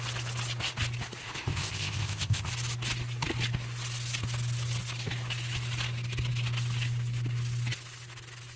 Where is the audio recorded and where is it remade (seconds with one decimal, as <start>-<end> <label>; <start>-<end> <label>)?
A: 0.0-1.2 recorded; 1.2-2.5 remade; 2.5-8.6 recorded